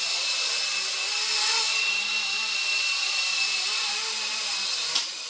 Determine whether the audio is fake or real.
real